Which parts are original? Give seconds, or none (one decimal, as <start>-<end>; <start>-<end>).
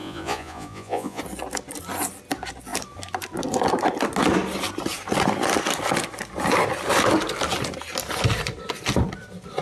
1.2-9.6